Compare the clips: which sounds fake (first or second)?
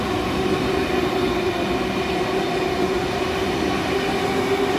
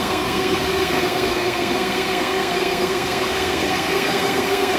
second